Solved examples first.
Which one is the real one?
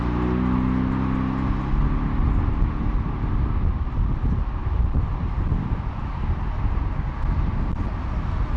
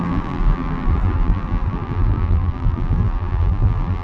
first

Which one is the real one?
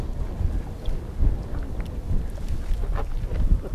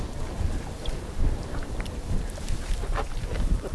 first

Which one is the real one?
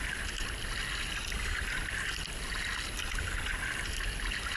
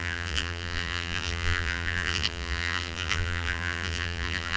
first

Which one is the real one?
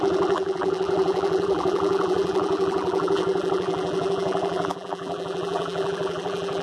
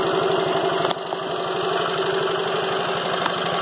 second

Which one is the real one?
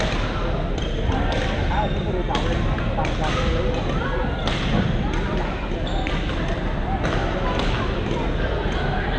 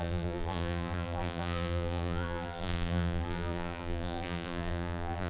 first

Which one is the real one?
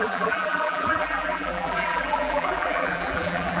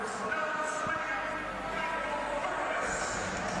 second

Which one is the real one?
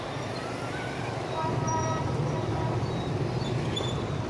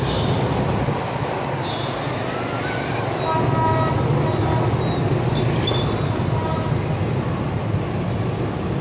second